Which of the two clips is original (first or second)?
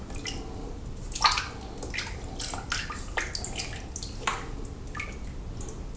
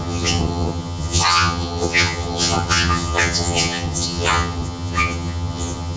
first